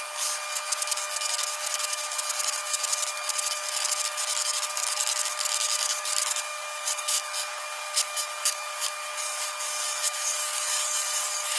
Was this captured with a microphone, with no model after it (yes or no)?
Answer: no